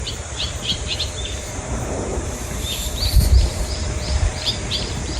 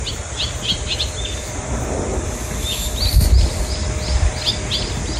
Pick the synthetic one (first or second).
first